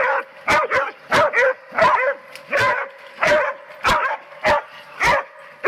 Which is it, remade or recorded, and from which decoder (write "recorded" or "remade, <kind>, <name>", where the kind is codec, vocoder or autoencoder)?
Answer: recorded